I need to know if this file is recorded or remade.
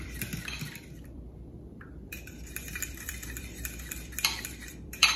remade